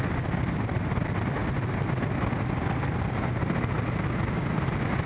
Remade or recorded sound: recorded